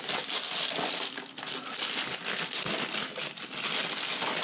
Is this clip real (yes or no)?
yes